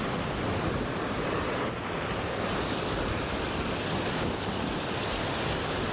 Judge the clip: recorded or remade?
recorded